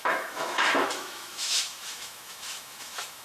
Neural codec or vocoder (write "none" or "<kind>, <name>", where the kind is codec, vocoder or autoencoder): autoencoder, DAC-VAE